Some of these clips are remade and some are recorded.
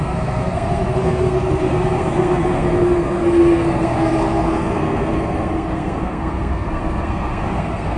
remade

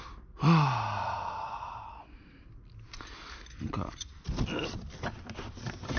recorded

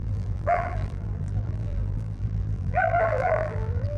remade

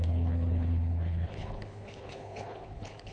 remade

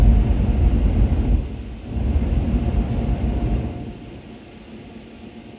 recorded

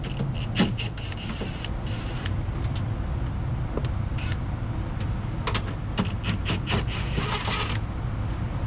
recorded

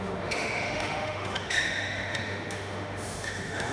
remade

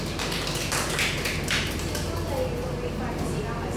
recorded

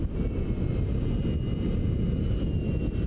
recorded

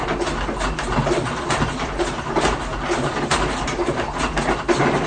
recorded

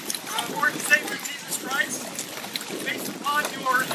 recorded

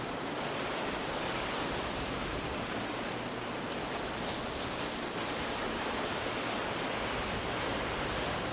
remade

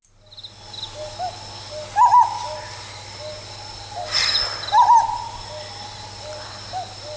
recorded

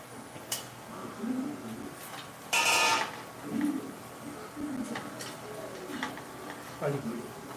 recorded